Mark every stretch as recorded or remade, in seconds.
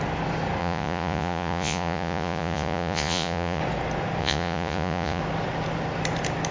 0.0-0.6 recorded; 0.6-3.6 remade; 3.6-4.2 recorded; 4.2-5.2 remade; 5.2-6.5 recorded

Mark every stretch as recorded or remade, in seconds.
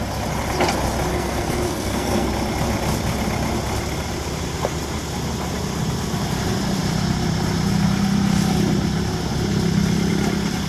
0.0-1.1 recorded; 1.1-2.3 remade; 2.3-10.7 recorded